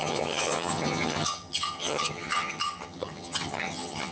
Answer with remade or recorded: remade